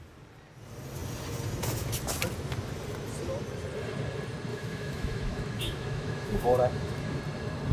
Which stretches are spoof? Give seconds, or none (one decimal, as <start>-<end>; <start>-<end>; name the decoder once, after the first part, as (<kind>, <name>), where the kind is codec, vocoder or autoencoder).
4.5-7.2 (autoencoder, DAC-VAE)